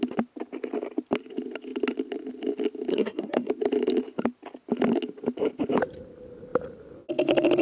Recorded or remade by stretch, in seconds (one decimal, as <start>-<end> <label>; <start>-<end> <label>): 0.0-2.9 recorded; 2.9-3.5 remade; 3.5-7.6 recorded